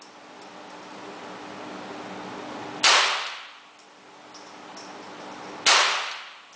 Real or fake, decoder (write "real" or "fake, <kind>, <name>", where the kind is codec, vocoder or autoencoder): real